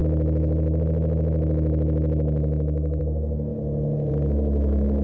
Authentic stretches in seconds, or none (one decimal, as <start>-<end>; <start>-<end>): 0.0-5.0